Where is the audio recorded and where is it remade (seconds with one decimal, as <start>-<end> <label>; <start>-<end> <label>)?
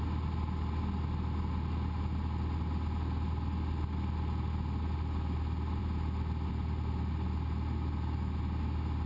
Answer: 0.0-9.1 recorded